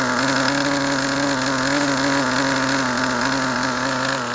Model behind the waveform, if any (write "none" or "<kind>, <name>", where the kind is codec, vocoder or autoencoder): none